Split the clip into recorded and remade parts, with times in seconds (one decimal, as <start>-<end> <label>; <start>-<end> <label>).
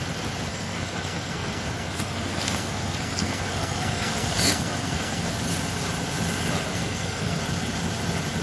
0.0-0.5 recorded; 0.5-5.3 remade; 5.3-6.7 recorded; 6.7-7.4 remade; 7.4-8.4 recorded